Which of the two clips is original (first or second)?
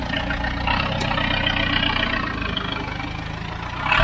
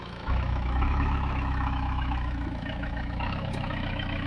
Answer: first